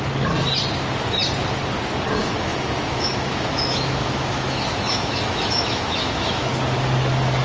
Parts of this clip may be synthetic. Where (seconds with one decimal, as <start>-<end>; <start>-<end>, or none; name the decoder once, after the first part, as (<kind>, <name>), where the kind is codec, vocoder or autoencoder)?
2.2-6.5 (autoencoder, DAC-VAE)